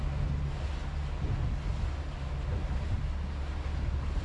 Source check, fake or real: real